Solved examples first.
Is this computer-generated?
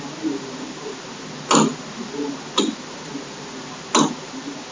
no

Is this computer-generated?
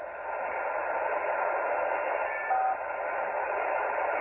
no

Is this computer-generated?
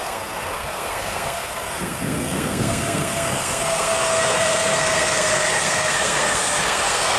yes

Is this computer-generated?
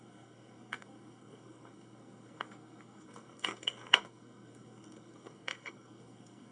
yes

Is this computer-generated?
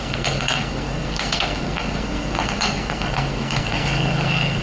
yes